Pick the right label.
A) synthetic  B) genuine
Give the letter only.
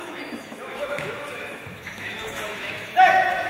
A